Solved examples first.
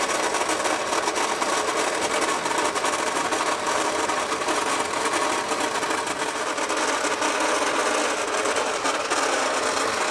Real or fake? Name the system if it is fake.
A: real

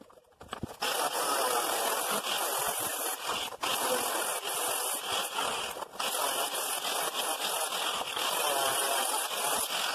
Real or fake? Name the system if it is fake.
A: real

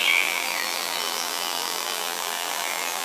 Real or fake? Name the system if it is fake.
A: fake, vocoder, BigVGAN v2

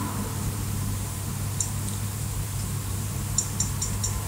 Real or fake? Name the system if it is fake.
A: fake, vocoder, BigVGAN v2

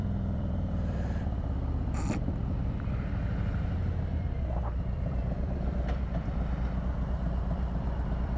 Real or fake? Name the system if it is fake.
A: fake, vocoder, BigVGAN v2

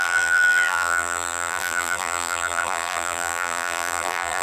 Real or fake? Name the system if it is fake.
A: fake, vocoder, BigVGAN v2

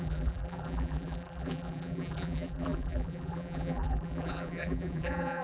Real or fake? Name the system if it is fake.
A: fake, vocoder, BigVGAN v2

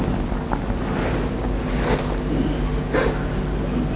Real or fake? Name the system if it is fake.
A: real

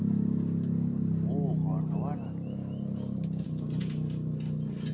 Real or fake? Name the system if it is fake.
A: real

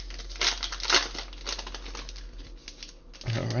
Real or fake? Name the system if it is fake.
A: real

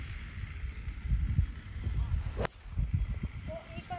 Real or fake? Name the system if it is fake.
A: real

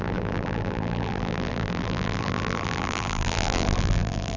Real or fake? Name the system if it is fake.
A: fake, vocoder, BigVGAN v2